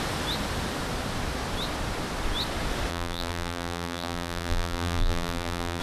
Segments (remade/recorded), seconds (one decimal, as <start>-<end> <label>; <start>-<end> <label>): 0.0-2.9 recorded; 2.9-5.8 remade